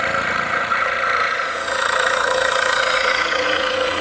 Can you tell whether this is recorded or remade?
remade